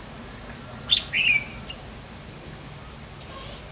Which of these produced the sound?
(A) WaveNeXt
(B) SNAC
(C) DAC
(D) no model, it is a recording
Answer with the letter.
D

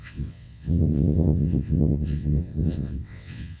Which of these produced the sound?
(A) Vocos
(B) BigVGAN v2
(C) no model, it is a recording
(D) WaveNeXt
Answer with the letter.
D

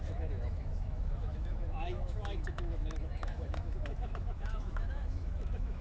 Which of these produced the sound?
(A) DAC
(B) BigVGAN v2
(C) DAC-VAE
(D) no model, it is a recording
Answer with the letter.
C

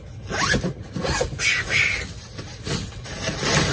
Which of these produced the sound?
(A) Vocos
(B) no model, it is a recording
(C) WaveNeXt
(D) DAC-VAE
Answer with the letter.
B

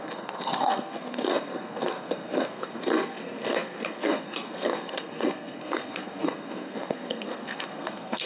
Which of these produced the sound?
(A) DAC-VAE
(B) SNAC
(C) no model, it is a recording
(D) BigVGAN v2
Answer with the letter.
B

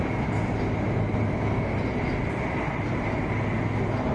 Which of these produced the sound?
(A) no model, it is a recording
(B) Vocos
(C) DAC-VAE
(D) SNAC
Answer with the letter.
A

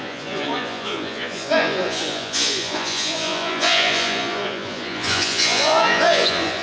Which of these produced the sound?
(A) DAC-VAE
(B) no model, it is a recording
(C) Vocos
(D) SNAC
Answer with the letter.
C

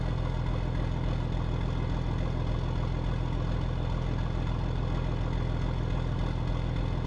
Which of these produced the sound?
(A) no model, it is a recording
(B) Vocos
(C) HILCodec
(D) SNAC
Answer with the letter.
A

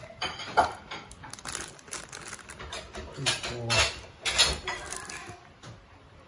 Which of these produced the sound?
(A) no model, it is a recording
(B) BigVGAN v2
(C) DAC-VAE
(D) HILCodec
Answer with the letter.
A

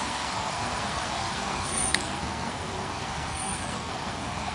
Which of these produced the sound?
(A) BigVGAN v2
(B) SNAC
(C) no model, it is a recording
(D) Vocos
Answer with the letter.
B